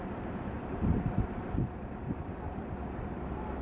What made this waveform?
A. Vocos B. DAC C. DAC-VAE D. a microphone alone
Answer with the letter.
D